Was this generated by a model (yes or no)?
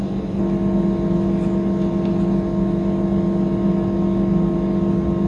no